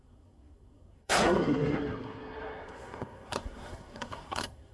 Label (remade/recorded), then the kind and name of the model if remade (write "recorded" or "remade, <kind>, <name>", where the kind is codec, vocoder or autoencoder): remade, codec, SNAC